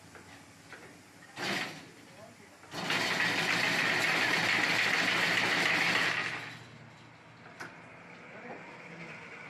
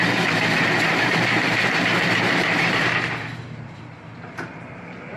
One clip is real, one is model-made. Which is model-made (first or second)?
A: second